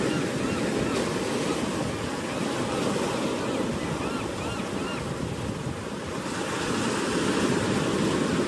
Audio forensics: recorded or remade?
recorded